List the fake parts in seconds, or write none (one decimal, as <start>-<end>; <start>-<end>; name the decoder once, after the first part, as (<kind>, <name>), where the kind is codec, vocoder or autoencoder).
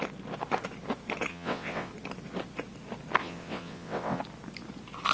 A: 1.3-1.9 (vocoder, WaveNeXt); 3.2-4.2